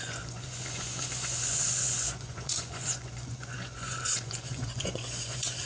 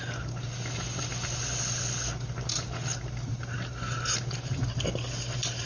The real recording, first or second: second